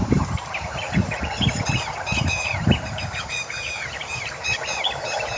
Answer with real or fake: fake